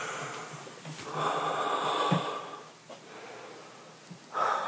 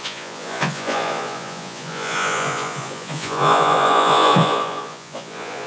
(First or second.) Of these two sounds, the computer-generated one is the second